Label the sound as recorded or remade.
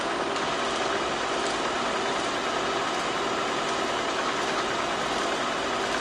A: recorded